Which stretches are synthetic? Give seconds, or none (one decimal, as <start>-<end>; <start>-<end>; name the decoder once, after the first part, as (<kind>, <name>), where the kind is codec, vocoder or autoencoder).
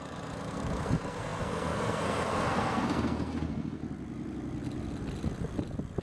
0.0-3.8 (codec, SNAC)